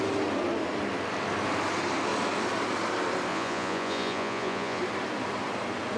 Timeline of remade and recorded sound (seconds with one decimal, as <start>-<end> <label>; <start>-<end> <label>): 0.0-3.3 recorded; 3.3-4.8 remade; 4.8-6.0 recorded